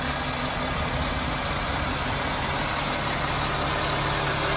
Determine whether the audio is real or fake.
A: real